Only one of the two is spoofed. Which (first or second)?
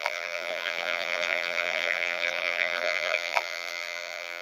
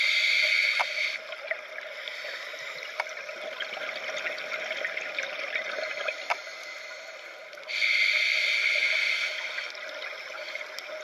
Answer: first